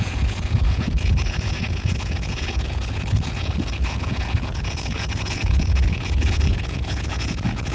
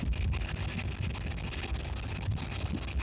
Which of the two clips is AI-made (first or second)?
first